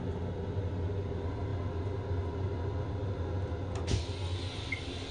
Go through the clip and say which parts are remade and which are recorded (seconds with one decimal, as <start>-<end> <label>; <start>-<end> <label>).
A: 0.0-5.1 recorded